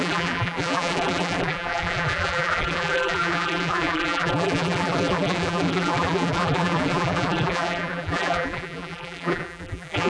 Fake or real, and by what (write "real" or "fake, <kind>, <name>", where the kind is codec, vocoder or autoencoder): fake, vocoder, BigVGAN v2